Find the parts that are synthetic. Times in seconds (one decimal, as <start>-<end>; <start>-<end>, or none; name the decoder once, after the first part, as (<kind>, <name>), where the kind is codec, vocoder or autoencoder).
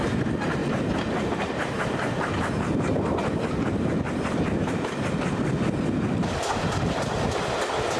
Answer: none